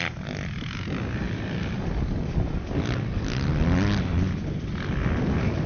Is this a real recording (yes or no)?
yes